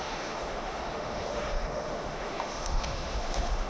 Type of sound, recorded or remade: remade